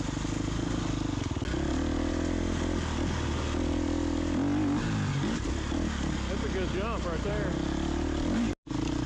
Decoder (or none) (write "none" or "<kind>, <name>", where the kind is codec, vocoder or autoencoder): none